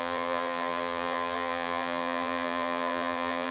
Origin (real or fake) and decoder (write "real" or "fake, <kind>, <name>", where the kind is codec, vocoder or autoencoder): fake, vocoder, BigVGAN v2